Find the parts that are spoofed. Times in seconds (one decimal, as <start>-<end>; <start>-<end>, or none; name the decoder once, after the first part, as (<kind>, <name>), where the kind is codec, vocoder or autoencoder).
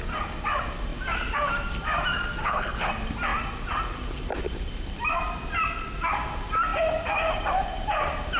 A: 2.4-2.9 (codec, HILCodec)